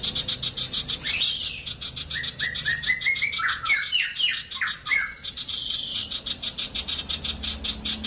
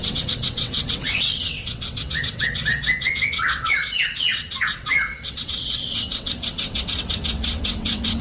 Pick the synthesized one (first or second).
second